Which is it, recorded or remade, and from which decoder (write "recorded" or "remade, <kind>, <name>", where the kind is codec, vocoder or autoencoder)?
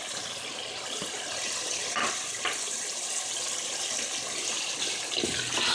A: recorded